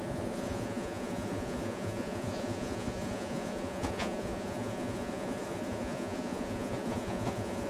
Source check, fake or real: fake